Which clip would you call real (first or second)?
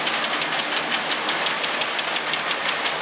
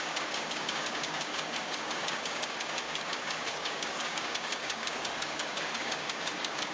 first